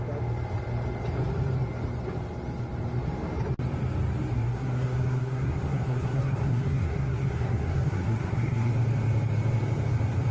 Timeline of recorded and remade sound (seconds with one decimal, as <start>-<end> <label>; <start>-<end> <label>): 0.0-4.3 recorded; 4.3-8.7 remade; 8.7-10.3 recorded